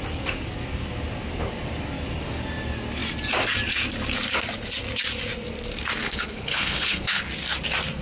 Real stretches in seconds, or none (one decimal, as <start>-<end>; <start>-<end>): 0.0-6.0; 7.2-8.0